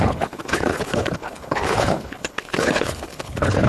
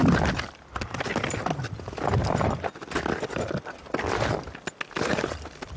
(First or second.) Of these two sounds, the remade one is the first